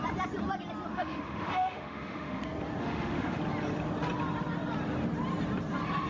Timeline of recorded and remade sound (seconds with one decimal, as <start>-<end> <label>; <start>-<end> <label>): 0.0-0.9 recorded; 0.9-2.4 remade; 2.4-2.8 recorded; 2.8-3.4 remade; 3.4-6.1 recorded